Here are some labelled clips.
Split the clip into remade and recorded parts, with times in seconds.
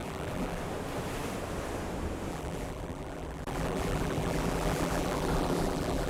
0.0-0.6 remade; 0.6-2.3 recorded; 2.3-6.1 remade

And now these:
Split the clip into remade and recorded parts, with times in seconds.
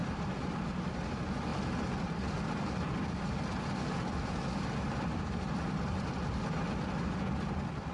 0.0-7.9 recorded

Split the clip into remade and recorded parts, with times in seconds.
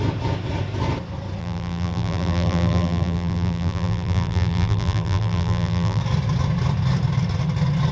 0.0-1.4 recorded; 1.4-6.0 remade; 6.0-7.9 recorded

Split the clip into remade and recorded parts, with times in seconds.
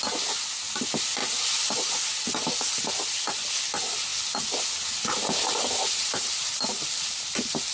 0.0-6.0 recorded; 6.0-7.0 remade; 7.0-7.7 recorded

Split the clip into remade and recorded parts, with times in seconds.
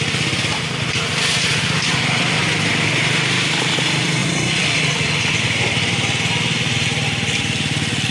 0.0-1.1 recorded; 1.1-1.6 remade; 1.6-4.2 recorded; 4.2-5.3 remade; 5.3-8.1 recorded